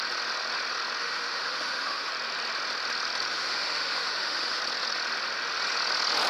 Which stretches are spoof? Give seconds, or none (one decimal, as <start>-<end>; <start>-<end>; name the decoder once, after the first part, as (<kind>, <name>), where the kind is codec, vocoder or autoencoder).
1.0-2.1 (autoencoder, DAC-VAE); 3.3-4.6